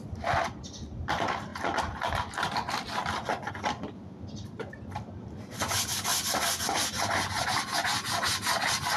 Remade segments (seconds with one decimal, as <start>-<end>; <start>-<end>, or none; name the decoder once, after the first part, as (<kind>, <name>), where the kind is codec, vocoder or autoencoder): 1.5-2.2 (vocoder, BigVGAN v2)